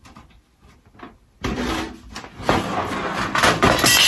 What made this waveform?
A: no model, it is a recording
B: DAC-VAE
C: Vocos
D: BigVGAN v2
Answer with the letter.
A